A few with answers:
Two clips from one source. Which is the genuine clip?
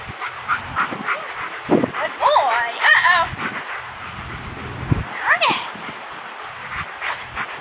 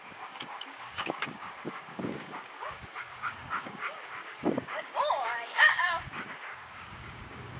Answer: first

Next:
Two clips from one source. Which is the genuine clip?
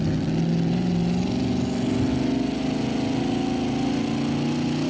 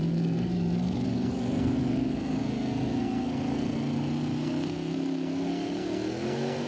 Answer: first